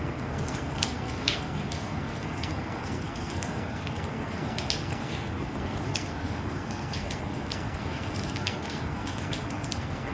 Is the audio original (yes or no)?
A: no